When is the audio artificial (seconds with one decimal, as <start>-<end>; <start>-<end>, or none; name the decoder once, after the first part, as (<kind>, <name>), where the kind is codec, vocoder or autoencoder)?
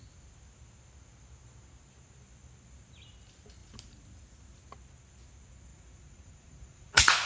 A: 5.7-7.3 (vocoder, Vocos)